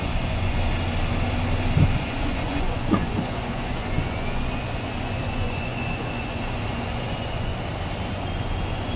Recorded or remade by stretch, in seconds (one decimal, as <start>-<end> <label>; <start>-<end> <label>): 0.0-0.7 remade; 0.7-1.9 recorded; 1.9-7.5 remade; 7.5-8.1 recorded; 8.1-9.0 remade